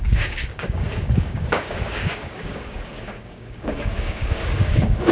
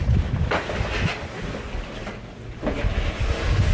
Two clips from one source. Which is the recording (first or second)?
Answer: second